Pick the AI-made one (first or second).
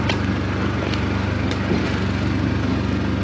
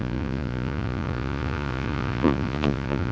second